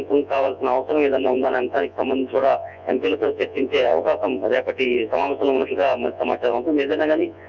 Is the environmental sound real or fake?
fake